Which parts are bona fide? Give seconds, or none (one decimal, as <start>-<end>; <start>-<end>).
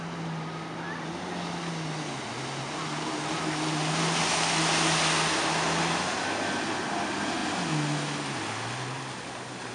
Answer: 0.0-9.7